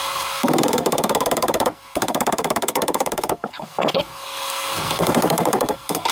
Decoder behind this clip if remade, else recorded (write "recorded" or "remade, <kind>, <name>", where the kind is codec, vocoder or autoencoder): remade, codec, SNAC